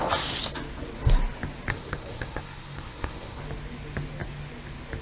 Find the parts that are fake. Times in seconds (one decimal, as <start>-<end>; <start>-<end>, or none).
1.7-3.4